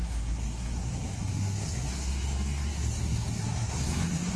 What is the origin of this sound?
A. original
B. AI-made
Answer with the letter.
B